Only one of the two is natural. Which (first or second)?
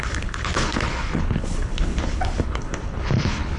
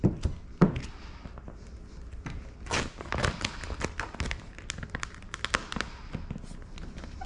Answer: second